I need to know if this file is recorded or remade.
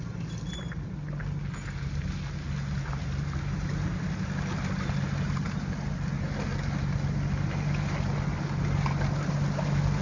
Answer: recorded